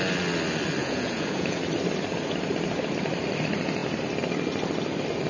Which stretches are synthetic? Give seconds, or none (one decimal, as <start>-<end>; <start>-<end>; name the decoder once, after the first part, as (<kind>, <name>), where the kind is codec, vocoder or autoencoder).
0.8-1.6 (vocoder, Vocos)